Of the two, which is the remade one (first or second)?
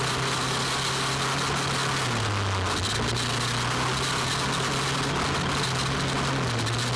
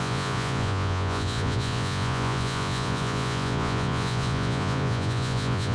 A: second